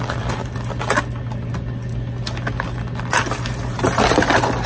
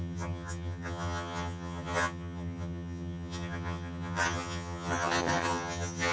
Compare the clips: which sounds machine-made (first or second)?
second